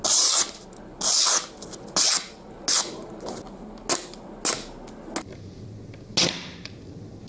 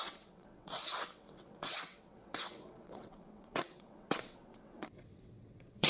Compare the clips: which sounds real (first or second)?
first